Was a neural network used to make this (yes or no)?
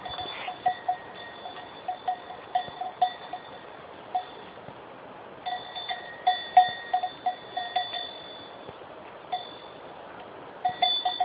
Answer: no